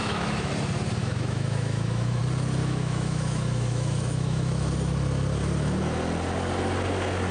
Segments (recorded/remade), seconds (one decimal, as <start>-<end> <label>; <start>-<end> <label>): 0.0-0.5 remade; 0.5-1.0 recorded; 1.0-2.2 remade; 2.2-2.6 recorded; 2.6-4.7 remade; 4.7-7.3 recorded